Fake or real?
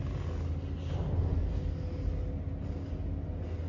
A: real